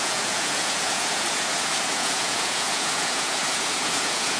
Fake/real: fake